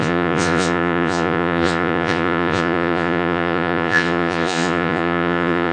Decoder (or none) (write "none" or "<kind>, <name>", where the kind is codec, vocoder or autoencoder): vocoder, Vocos